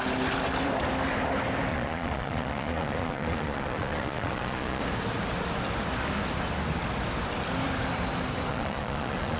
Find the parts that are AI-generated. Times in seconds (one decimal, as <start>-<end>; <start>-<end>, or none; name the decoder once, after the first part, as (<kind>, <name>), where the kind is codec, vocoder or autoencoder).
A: 1.7-4.8 (vocoder, Vocos); 8.5-9.4